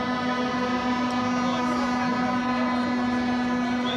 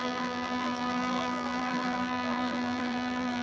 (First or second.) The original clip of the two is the first